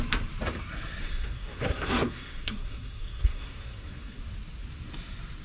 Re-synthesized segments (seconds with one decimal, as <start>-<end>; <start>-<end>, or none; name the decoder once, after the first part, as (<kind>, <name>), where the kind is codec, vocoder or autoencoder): 1.0-4.2 (codec, SNAC)